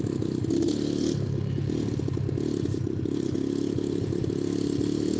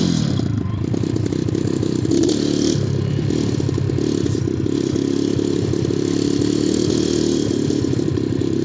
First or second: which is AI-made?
second